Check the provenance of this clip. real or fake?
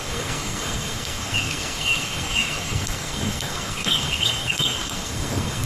fake